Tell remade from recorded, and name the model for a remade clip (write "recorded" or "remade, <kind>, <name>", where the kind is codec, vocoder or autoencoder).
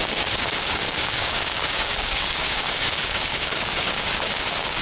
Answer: remade, codec, DAC